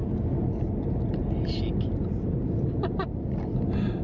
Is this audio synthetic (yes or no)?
no